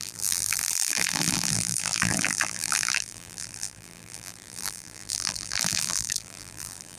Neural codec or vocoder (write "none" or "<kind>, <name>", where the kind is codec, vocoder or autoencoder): vocoder, BigVGAN v2